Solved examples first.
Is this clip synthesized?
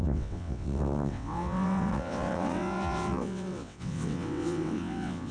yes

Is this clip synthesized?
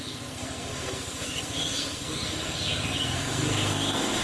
yes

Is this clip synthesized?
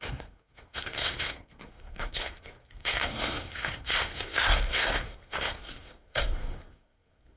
yes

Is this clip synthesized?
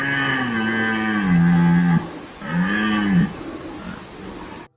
no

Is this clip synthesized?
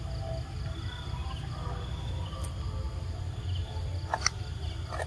no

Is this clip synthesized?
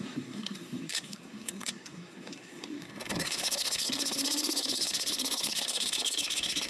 yes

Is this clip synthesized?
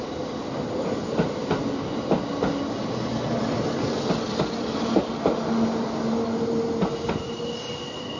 no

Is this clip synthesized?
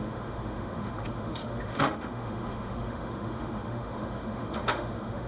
yes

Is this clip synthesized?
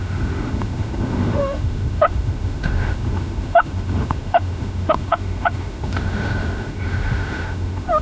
yes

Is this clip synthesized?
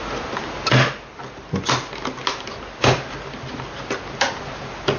no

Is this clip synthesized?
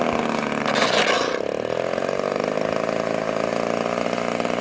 no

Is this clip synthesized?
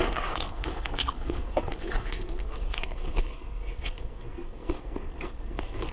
yes